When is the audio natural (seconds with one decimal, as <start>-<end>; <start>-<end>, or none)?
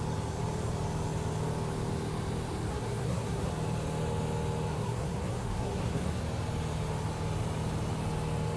0.0-2.7; 3.5-4.7; 6.2-8.6